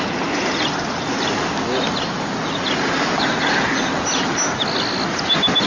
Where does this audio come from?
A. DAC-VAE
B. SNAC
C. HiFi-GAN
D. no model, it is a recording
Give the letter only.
D